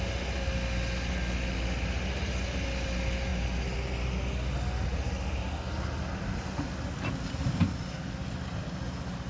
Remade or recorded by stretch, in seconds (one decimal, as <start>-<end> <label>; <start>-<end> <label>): 0.0-9.3 recorded